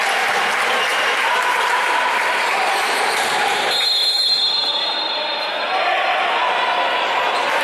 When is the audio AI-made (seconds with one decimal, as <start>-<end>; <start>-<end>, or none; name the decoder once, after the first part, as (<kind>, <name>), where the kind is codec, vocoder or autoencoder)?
0.9-4.4 (vocoder, BigVGAN v2)